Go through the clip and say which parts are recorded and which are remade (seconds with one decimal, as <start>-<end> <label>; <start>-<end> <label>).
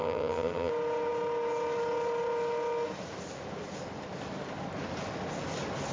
0.0-0.7 remade; 0.7-5.9 recorded